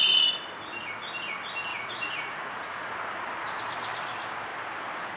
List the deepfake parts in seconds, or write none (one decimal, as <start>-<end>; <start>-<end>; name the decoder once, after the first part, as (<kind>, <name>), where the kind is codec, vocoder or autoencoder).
1.7-2.9 (vocoder, Vocos)